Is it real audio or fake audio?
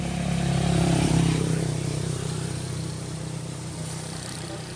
fake